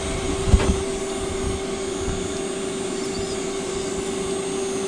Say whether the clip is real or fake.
real